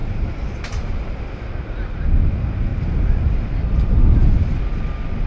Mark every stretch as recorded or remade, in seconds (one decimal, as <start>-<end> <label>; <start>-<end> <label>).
0.0-1.4 remade; 1.4-2.7 recorded; 2.7-4.6 remade; 4.6-5.3 recorded